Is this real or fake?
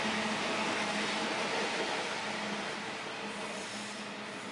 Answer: real